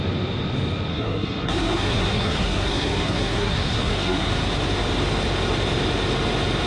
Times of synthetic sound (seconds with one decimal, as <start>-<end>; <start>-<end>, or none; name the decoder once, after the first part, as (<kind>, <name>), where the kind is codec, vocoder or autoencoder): 0.9-4.3 (codec, SNAC)